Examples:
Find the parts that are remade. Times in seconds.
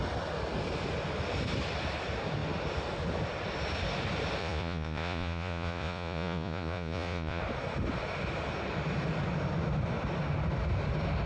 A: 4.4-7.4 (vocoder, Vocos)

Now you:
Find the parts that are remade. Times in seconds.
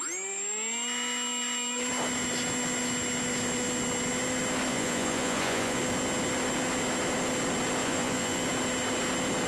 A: 4.7-5.8 (vocoder, Vocos); 7.8-8.4